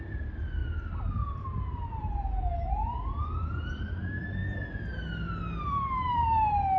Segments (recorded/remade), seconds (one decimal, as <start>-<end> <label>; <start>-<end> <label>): 0.0-0.6 remade; 0.6-2.0 recorded; 2.0-4.4 remade; 4.4-5.6 recorded; 5.6-6.8 remade